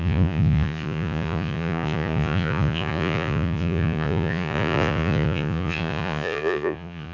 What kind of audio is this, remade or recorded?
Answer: remade